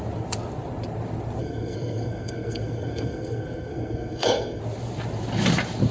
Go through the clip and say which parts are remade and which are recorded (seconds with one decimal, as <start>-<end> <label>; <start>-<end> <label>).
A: 0.0-1.4 recorded; 1.4-4.6 remade; 4.6-5.9 recorded